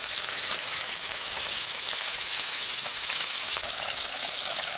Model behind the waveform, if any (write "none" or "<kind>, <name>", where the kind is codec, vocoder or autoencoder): autoencoder, DAC-VAE